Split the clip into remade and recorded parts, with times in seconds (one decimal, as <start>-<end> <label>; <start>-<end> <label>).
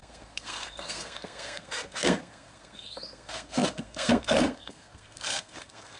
0.0-6.0 remade